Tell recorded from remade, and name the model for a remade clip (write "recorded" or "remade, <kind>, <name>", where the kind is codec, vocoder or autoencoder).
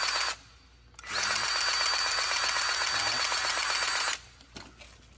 recorded